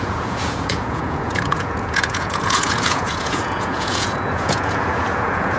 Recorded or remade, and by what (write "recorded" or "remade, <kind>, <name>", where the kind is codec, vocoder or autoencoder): remade, vocoder, Vocos